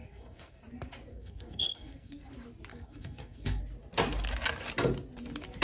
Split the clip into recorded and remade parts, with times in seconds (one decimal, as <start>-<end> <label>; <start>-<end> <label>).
0.0-0.6 remade; 0.6-1.1 recorded; 1.1-2.3 remade; 2.3-2.7 recorded; 2.7-3.6 remade; 3.6-5.6 recorded